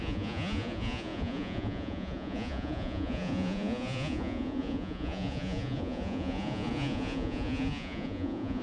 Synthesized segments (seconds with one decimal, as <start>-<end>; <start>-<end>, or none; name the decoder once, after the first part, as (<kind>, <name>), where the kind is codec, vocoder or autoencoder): 0.0-8.6 (vocoder, Vocos)